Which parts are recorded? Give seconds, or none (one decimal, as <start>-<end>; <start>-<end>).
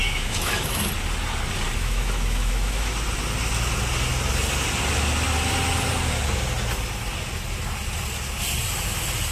0.9-1.8; 2.9-9.3